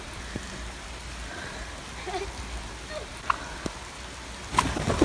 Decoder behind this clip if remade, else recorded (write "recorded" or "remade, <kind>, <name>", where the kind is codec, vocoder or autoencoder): recorded